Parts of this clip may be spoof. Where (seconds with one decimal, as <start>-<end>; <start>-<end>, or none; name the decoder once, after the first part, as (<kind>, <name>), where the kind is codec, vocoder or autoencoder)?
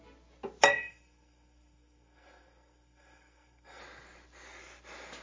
0.7-3.8 (codec, SNAC)